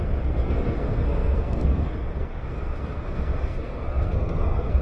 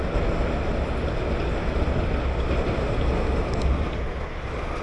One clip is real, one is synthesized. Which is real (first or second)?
second